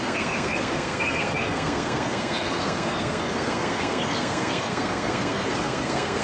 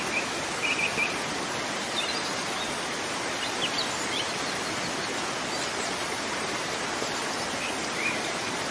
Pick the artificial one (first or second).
first